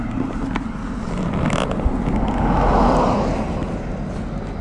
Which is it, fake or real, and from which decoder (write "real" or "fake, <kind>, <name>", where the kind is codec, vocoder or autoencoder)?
real